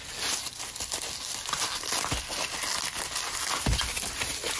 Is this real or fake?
real